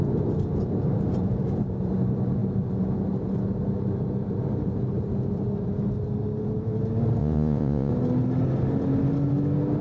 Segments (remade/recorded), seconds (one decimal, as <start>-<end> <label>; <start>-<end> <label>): 0.0-7.2 recorded; 7.2-7.9 remade; 7.9-9.8 recorded